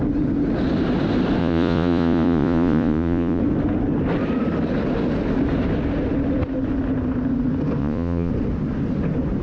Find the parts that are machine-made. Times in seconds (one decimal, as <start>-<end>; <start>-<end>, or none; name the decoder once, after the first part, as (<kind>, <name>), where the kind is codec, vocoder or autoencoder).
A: 1.4-3.4 (vocoder, Vocos); 7.8-8.3